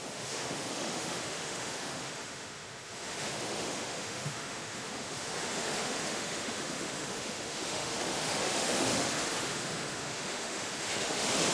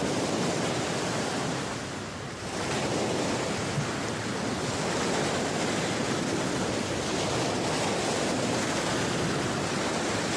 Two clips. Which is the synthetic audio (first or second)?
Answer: first